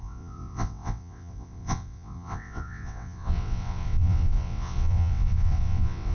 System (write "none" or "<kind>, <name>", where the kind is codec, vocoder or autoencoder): vocoder, WaveNeXt